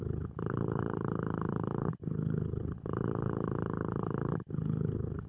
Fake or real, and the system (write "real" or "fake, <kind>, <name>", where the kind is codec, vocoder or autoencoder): fake, codec, HILCodec